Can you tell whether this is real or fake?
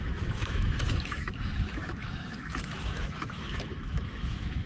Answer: fake